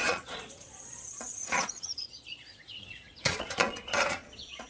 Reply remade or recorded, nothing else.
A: remade